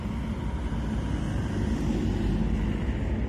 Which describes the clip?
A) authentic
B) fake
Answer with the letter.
A